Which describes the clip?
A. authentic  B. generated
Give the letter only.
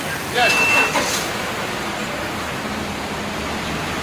A